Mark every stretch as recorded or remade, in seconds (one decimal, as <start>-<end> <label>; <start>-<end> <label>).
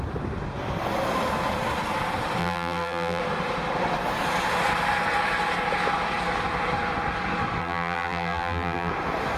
0.0-2.4 recorded; 2.4-3.2 remade; 3.2-7.6 recorded; 7.6-8.9 remade; 8.9-9.4 recorded